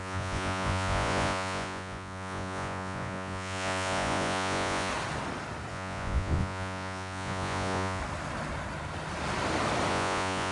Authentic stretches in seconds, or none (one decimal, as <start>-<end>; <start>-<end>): 4.9-5.7; 8.0-9.9